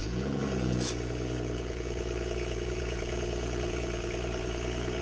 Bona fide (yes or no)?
no